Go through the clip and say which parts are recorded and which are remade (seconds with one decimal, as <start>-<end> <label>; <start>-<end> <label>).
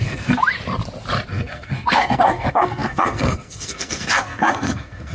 0.0-0.4 remade; 0.4-1.3 recorded; 1.3-5.1 remade